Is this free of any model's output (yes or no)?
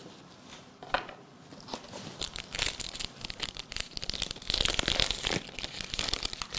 no